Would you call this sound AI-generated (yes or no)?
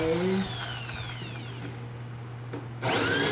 no